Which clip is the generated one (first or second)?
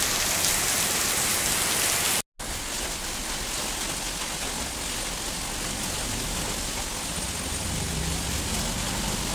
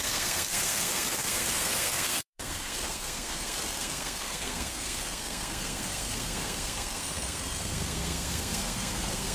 second